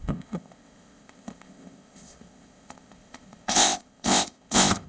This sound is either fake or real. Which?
fake